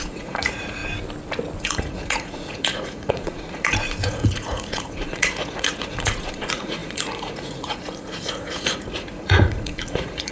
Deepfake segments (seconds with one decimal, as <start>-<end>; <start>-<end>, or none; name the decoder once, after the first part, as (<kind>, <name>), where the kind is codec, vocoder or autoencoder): 0.0-0.8 (vocoder, Vocos); 1.6-10.3